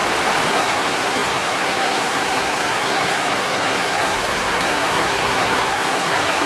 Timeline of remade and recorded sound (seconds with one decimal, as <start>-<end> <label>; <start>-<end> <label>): 0.0-0.5 recorded; 0.5-6.5 remade